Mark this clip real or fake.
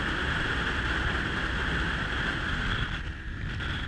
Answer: real